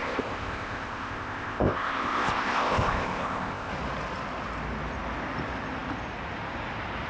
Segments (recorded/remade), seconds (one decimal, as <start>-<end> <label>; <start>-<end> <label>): 0.0-3.7 remade; 3.7-7.1 recorded